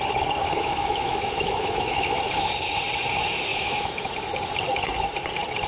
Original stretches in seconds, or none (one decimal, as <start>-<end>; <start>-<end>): 0.0-0.4; 2.5-3.5; 4.1-5.7